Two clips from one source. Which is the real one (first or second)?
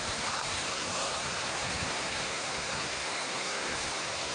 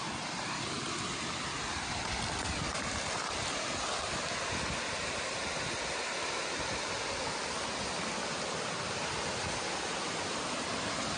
second